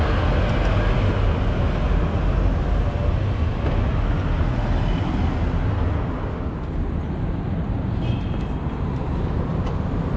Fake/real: real